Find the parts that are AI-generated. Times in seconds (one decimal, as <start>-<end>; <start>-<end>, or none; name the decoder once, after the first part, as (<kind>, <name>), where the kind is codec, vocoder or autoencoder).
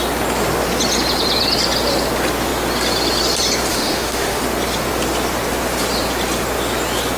3.7-4.4 (autoencoder, DAC-VAE)